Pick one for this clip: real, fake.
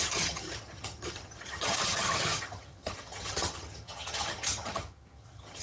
fake